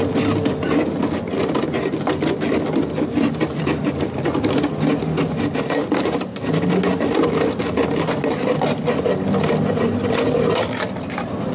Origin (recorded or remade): recorded